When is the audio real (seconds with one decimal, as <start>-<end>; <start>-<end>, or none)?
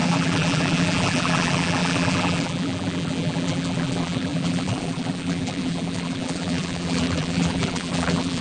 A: none